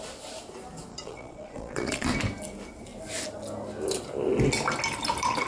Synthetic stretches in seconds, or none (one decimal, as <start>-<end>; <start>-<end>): 0.9-2.1